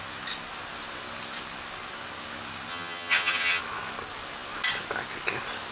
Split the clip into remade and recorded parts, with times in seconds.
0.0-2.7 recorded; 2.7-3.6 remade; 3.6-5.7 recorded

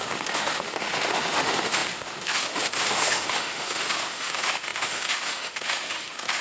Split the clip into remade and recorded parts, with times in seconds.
0.0-6.4 remade

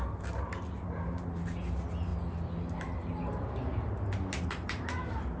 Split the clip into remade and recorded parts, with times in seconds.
0.0-5.4 recorded

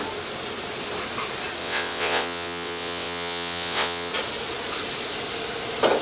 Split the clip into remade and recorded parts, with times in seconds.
0.0-1.6 recorded; 1.6-4.1 remade; 4.1-6.0 recorded

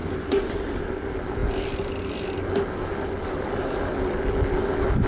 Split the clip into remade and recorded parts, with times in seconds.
0.0-5.1 recorded

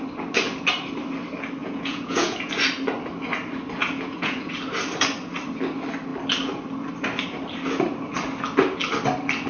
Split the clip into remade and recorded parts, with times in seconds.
0.0-1.6 recorded; 1.6-2.5 remade; 2.5-3.8 recorded; 3.8-4.5 remade; 4.5-9.5 recorded

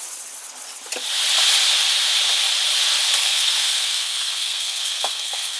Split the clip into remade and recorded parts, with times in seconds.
0.0-3.2 recorded; 3.2-5.6 remade

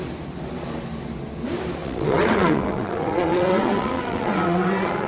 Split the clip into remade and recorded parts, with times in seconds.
0.0-1.8 recorded; 1.8-5.1 remade